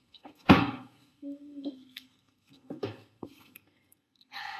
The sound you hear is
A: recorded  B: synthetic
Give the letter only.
B